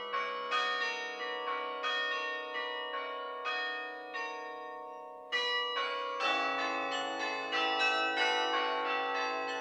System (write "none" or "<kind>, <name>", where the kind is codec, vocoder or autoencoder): none